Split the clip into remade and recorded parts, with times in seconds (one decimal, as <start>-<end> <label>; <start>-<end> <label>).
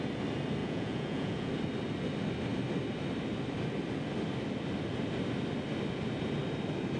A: 0.0-0.6 recorded; 0.6-1.5 remade; 1.5-7.0 recorded